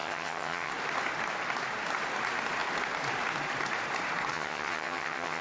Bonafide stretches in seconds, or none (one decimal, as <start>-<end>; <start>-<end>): 0.7-4.3